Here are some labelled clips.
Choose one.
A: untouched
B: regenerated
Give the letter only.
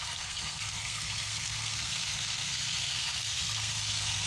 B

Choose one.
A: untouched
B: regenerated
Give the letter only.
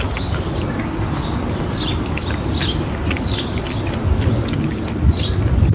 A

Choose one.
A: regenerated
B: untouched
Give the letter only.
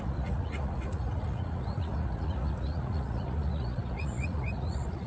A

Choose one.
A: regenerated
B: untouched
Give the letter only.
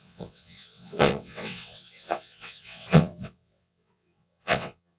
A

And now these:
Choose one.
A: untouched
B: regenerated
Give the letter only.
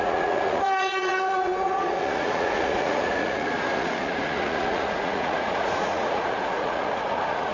B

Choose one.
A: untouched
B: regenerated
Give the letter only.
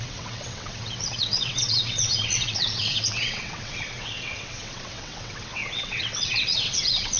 B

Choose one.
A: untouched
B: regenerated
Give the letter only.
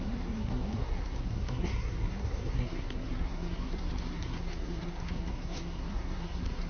B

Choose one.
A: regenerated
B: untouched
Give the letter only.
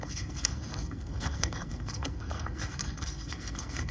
A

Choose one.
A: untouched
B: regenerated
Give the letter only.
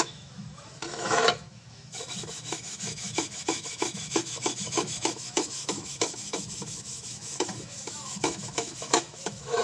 B